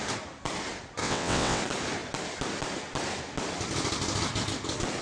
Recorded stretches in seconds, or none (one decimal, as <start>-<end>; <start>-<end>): 0.0-1.0; 1.6-5.0